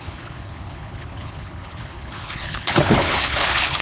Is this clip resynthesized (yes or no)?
yes